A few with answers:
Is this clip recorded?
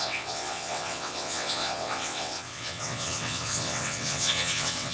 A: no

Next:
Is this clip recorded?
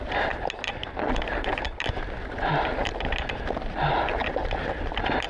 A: yes